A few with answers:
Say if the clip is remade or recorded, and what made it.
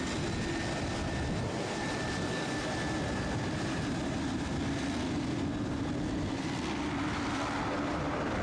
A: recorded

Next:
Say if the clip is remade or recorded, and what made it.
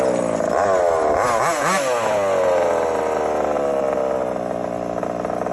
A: recorded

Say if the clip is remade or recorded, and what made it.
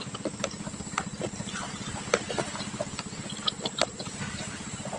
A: recorded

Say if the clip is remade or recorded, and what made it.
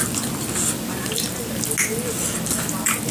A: recorded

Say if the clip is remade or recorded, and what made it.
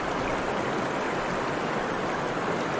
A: recorded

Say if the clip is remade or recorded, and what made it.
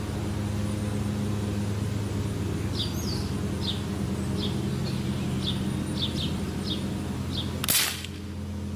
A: recorded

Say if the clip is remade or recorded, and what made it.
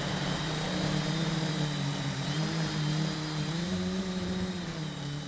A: remade, vocoder, BigVGAN v2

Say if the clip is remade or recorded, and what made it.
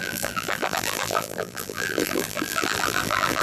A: remade, vocoder, BigVGAN v2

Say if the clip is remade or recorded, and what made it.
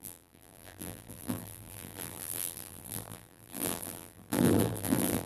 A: remade, vocoder, BigVGAN v2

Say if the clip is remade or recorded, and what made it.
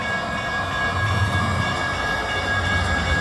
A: recorded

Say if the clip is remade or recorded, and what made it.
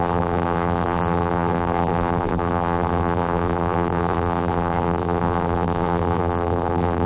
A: remade, vocoder, BigVGAN v2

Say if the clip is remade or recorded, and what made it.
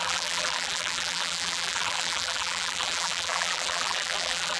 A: remade, vocoder, BigVGAN v2